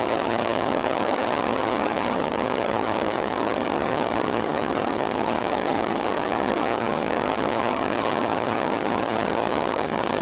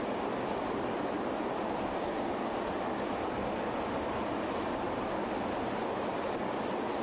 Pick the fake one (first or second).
first